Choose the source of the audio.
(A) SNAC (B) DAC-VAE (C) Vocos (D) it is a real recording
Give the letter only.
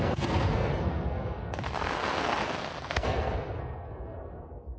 A